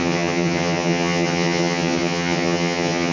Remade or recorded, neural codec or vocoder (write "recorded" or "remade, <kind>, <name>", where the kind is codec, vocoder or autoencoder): remade, vocoder, HiFi-GAN